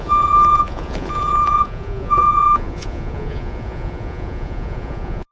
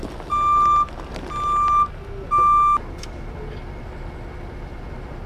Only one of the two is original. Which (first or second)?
second